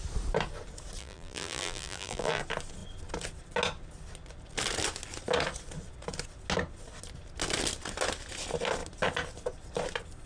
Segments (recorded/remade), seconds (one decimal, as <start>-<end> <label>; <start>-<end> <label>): 0.0-1.0 recorded; 1.0-2.4 remade; 2.4-10.3 recorded